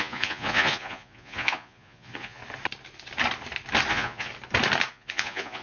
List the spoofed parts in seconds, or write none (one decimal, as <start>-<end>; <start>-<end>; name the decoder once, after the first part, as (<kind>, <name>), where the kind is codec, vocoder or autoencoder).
0.0-2.4 (vocoder, Vocos); 3.9-4.3; 4.9-5.6